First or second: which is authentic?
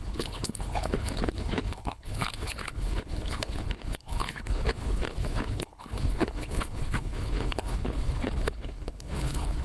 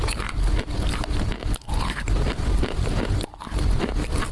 second